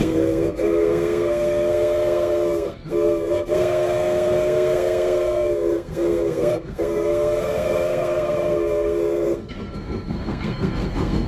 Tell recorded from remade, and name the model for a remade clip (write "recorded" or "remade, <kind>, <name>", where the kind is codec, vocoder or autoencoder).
remade, codec, SNAC